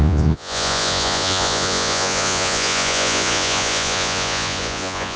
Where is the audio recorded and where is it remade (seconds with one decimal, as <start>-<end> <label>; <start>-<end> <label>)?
0.0-5.2 remade